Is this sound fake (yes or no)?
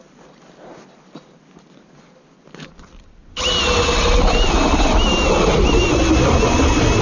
no